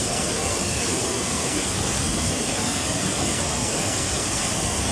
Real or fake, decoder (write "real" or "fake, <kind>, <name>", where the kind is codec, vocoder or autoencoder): fake, codec, SNAC